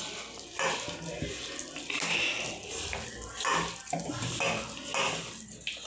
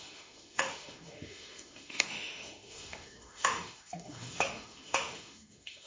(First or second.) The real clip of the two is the first